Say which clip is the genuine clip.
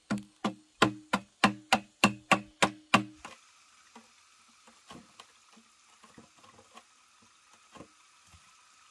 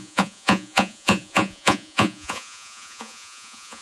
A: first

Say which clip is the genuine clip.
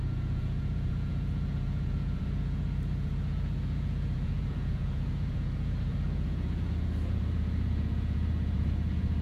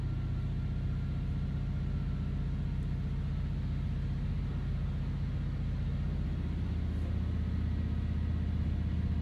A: second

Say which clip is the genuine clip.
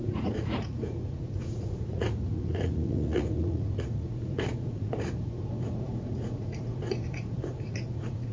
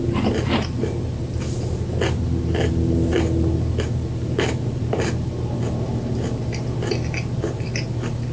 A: second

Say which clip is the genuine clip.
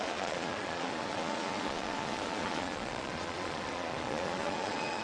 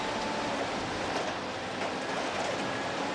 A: second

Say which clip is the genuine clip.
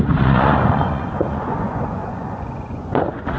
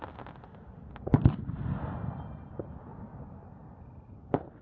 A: second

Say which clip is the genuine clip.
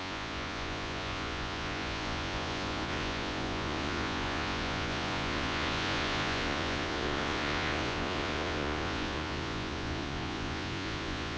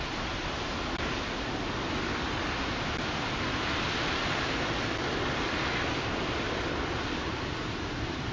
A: second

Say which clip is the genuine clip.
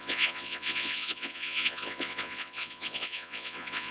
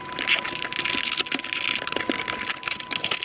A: second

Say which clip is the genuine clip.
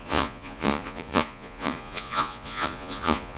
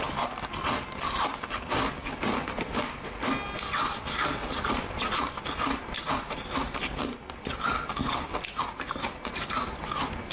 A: second